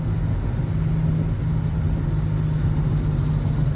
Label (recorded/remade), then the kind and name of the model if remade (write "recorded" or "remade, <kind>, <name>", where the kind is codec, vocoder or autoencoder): recorded